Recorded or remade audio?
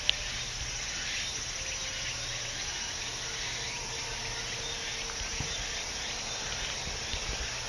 recorded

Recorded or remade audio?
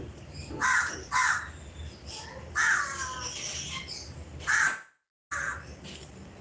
recorded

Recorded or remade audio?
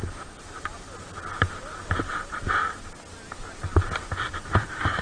recorded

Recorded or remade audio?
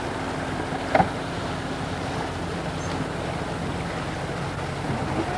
recorded